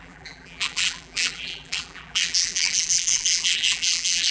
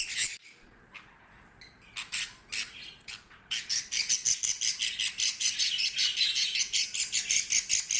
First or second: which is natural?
second